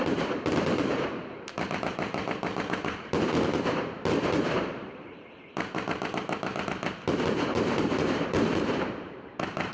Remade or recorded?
remade